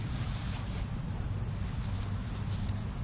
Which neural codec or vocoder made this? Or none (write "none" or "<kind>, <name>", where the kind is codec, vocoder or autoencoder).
none